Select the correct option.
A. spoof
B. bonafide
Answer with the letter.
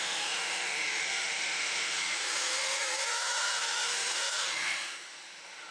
A